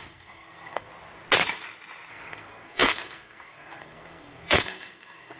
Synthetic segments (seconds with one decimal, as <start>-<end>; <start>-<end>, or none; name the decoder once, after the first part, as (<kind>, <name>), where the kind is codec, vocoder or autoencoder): 0.0-0.9 (codec, SNAC); 2.1-5.4